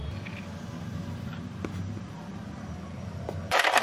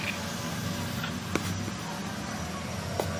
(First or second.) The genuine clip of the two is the second